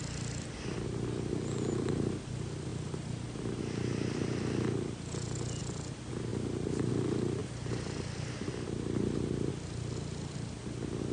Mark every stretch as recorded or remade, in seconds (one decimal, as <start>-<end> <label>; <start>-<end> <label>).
0.0-11.1 recorded